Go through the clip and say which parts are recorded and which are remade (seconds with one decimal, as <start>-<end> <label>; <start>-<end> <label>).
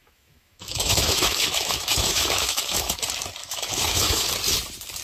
0.0-3.0 remade; 3.0-3.4 recorded; 3.4-4.3 remade; 4.3-5.0 recorded